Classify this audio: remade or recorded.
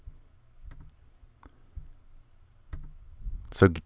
recorded